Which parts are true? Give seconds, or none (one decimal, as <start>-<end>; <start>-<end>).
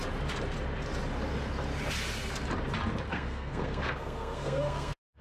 0.0-3.1